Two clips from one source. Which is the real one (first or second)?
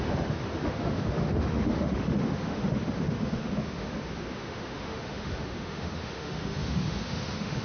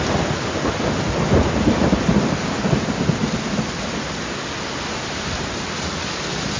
second